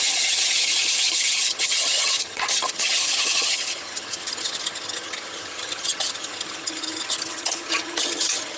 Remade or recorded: remade